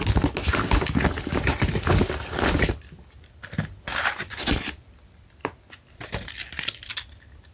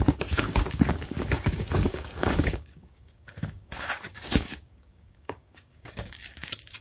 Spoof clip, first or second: second